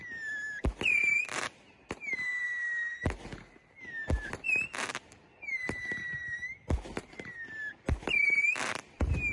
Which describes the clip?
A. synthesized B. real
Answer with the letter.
B